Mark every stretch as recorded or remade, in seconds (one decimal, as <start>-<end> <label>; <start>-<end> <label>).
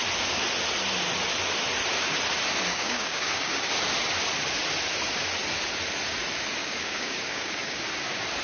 0.0-2.7 recorded; 2.7-3.7 remade; 3.7-6.6 recorded; 6.6-7.8 remade; 7.8-8.4 recorded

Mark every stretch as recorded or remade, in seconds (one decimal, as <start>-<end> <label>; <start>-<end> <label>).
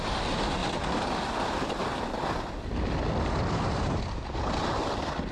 0.0-5.3 recorded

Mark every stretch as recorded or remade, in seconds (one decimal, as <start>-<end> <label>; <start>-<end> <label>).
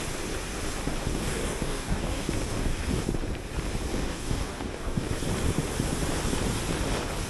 0.0-1.1 recorded; 1.1-3.0 remade; 3.0-3.9 recorded; 3.9-5.1 remade; 5.1-7.3 recorded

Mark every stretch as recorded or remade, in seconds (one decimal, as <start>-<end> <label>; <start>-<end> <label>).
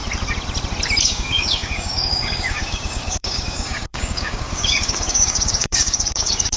0.0-1.0 recorded; 1.0-6.6 remade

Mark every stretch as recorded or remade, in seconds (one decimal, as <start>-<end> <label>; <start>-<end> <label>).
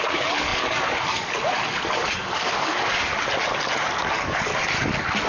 0.0-3.1 remade; 3.1-4.1 recorded; 4.1-4.5 remade; 4.5-5.3 recorded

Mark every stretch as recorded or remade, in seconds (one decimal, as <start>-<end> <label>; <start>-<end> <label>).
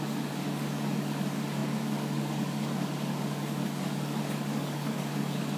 0.0-5.6 remade